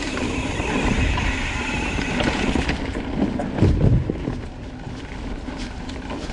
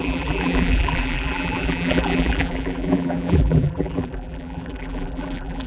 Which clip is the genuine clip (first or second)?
first